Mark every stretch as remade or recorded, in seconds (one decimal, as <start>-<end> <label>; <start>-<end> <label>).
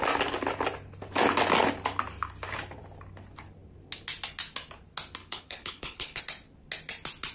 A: 0.0-5.2 recorded; 5.2-6.2 remade; 6.2-7.3 recorded